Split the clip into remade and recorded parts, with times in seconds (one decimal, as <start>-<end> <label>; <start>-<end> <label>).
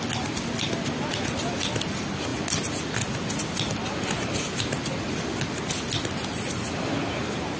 0.0-7.6 recorded